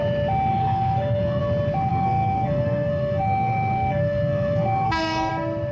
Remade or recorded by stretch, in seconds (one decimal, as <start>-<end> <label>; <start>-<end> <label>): 0.0-0.5 recorded; 0.5-1.4 remade; 1.4-1.9 recorded; 1.9-5.3 remade; 5.3-5.7 recorded

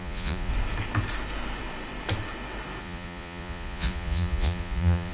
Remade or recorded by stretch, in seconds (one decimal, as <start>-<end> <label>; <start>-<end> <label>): 0.0-0.5 remade; 0.5-2.8 recorded; 2.8-5.1 remade

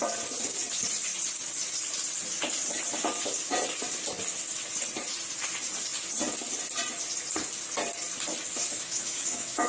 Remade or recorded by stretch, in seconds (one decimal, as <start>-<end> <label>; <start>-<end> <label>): 0.0-8.6 recorded; 8.6-9.7 remade

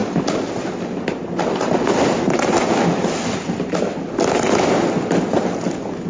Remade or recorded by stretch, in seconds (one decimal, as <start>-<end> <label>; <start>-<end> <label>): 0.0-6.1 recorded

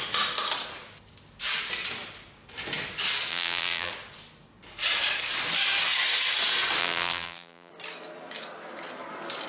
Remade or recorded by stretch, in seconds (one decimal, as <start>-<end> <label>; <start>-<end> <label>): 0.0-3.3 recorded; 3.3-3.9 remade; 3.9-6.8 recorded; 6.8-7.7 remade; 7.7-9.5 recorded

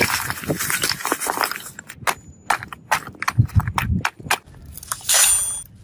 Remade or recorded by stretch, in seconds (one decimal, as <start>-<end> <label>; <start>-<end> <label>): 0.0-5.8 recorded

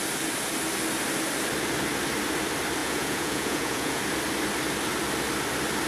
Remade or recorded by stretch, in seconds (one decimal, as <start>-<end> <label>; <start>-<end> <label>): 0.0-2.8 recorded; 2.8-4.0 remade; 4.0-5.9 recorded